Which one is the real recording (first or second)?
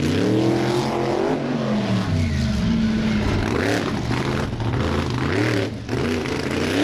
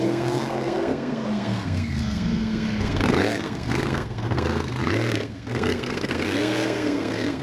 first